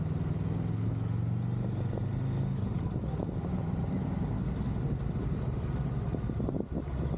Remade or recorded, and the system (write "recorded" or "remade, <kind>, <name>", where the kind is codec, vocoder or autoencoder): recorded